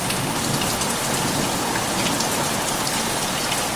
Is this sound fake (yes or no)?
no